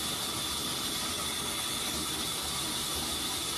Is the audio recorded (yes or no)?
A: yes